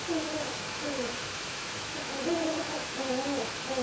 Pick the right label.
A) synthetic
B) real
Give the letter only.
A